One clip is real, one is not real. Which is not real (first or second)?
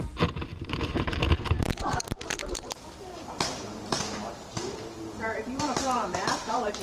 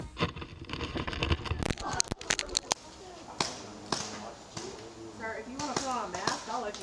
first